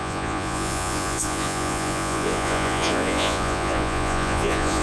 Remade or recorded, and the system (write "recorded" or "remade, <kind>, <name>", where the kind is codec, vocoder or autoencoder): remade, vocoder, Vocos